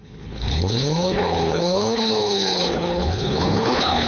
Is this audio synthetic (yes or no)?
yes